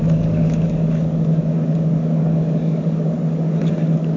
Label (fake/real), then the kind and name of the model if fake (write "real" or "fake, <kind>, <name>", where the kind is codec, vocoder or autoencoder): fake, codec, DAC